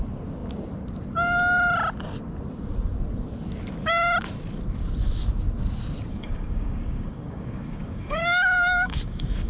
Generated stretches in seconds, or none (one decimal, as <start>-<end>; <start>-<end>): 6.1-9.5